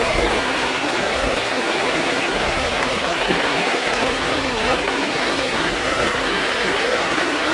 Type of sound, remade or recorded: remade